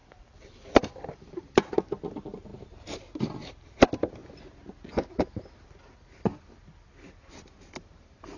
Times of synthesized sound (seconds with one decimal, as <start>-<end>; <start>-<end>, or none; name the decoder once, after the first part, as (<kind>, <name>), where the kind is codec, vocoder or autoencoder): 0.0-1.8 (vocoder, BigVGAN v2)